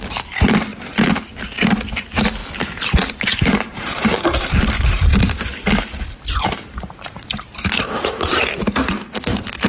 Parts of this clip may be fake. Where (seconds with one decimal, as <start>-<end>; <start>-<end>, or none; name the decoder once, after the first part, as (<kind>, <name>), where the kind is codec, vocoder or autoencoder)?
0.0-0.7 (vocoder, BigVGAN v2); 1.9-2.4; 3.0-5.1; 6.4-9.7